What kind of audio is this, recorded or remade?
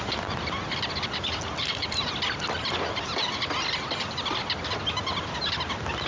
recorded